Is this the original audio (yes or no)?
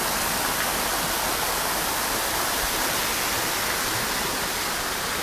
yes